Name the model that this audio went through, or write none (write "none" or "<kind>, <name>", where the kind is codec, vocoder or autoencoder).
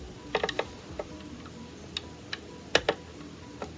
none